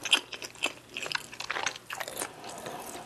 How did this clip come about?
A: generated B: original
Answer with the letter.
B